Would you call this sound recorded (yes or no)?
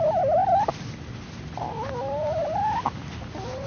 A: yes